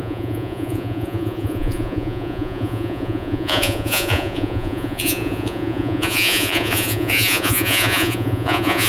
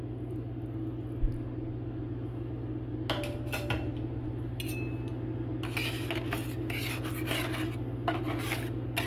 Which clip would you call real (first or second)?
second